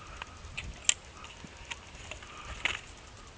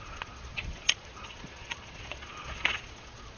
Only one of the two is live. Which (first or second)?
first